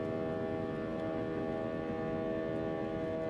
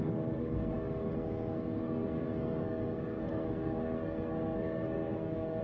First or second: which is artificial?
second